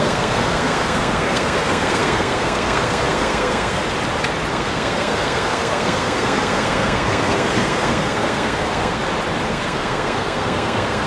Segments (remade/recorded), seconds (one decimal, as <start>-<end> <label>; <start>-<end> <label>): 0.0-3.8 remade; 3.8-4.5 recorded; 4.5-9.0 remade; 9.0-9.5 recorded; 9.5-11.1 remade